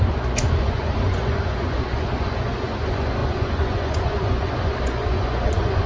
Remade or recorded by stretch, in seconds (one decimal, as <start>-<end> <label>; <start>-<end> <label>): 0.0-5.9 remade